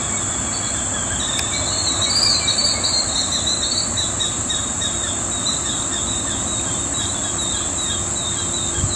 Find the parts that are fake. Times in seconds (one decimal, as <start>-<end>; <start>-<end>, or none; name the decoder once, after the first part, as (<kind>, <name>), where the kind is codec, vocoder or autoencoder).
none